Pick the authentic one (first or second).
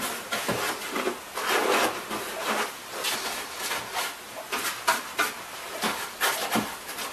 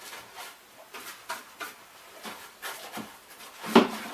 first